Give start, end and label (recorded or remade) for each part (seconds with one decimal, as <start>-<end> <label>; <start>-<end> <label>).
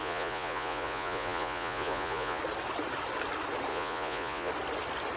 0.0-2.4 remade; 2.4-3.7 recorded; 3.7-4.5 remade; 4.5-5.2 recorded